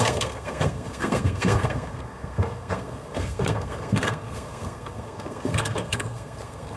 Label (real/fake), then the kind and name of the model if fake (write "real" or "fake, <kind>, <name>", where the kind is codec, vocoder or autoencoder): fake, codec, SNAC